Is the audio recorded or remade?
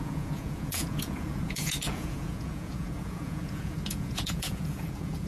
remade